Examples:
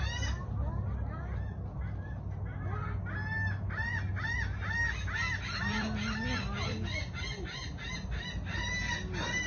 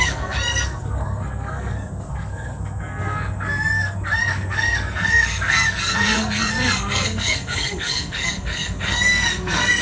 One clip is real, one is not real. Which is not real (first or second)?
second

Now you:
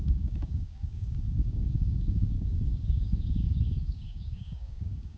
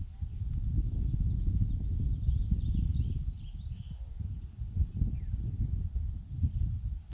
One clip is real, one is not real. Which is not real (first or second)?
first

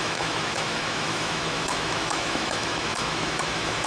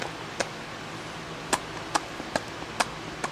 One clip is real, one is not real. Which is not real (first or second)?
first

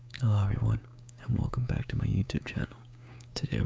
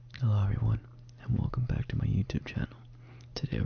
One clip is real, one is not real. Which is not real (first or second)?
first